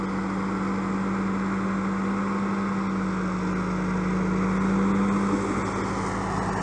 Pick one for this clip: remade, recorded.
recorded